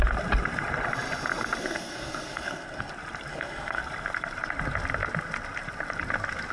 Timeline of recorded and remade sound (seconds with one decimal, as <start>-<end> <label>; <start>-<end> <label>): 0.0-1.6 recorded; 1.6-2.9 remade; 2.9-3.3 recorded; 3.3-3.8 remade; 3.8-6.5 recorded